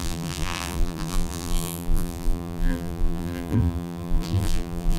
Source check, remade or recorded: remade